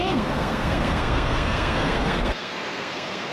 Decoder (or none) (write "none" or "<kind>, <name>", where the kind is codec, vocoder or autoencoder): codec, SNAC